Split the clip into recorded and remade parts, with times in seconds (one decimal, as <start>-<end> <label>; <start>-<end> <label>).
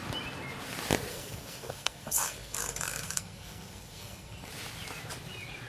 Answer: 0.0-1.1 recorded; 1.1-4.5 remade; 4.5-5.7 recorded